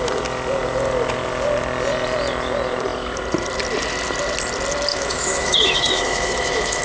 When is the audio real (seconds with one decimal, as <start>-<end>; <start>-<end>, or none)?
0.0-4.9